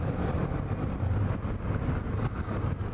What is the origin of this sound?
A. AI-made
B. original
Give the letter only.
B